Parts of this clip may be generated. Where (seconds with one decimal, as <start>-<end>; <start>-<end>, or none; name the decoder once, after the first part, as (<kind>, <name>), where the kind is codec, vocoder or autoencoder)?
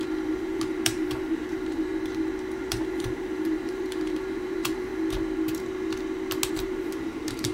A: 0.0-1.9 (vocoder, BigVGAN v2); 2.7-4.9; 6.5-7.5